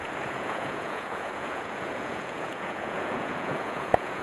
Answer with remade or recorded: remade